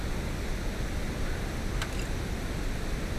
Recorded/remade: recorded